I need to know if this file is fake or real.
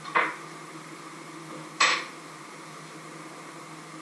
real